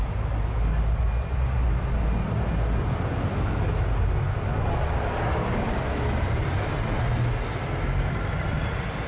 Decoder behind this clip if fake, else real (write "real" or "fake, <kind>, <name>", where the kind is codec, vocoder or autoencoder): real